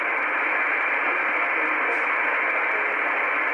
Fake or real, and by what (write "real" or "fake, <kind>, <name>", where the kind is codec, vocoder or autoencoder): real